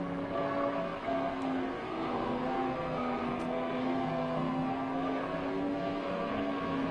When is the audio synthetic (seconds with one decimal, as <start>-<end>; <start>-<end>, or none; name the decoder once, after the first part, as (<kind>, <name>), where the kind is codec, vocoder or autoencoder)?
0.0-6.9 (codec, SNAC)